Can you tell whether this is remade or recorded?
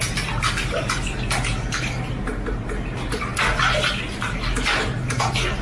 recorded